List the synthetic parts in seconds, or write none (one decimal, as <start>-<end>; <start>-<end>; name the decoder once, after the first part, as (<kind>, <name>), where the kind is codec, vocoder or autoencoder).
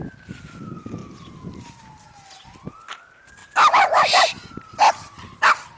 3.4-4.5 (vocoder, BigVGAN v2)